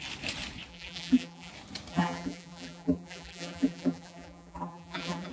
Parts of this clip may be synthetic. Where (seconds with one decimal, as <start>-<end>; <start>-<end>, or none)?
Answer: 0.7-1.5; 1.9-5.3